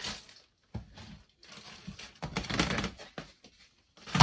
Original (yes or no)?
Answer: yes